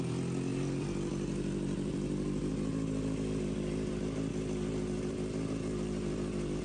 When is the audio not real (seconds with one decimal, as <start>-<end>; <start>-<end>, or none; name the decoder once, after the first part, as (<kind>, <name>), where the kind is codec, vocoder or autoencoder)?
0.5-3.9 (vocoder, BigVGAN v2); 4.3-6.6